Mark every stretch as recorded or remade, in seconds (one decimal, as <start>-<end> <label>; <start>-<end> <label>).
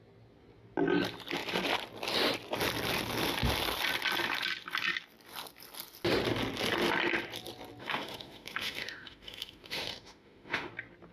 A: 0.0-7.8 recorded; 7.8-10.7 remade; 10.7-11.1 recorded